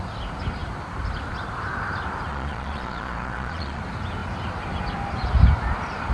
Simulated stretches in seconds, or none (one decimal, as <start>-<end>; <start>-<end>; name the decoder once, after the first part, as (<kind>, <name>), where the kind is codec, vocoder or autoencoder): 2.3-3.8 (vocoder, Vocos)